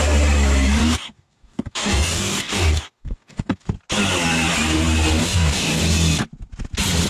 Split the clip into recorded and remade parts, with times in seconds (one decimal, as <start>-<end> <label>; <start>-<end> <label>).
0.0-0.8 recorded; 0.8-3.7 remade; 3.7-5.2 recorded; 5.2-5.8 remade; 5.8-7.1 recorded